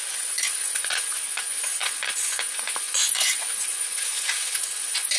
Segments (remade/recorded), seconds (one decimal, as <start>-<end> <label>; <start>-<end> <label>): 0.0-5.2 remade